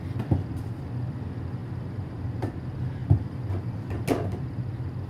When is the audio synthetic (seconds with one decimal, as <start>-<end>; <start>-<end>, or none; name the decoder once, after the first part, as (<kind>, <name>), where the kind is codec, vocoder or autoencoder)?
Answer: 1.6-2.5 (vocoder, BigVGAN v2); 3.0-3.8